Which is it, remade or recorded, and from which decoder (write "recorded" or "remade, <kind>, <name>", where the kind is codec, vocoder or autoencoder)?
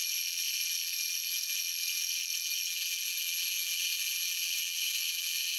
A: remade, vocoder, BigVGAN v2